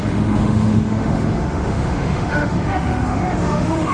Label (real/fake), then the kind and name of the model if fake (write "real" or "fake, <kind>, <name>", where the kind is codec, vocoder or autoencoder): fake, autoencoder, DAC-VAE